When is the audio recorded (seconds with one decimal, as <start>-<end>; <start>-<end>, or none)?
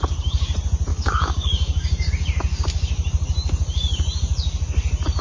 0.0-0.9; 2.1-5.2